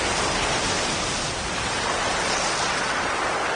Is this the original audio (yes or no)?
yes